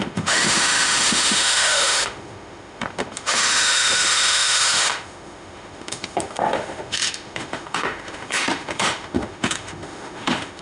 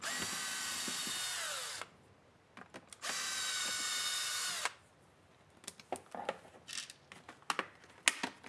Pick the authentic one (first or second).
second